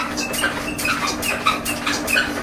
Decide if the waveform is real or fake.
real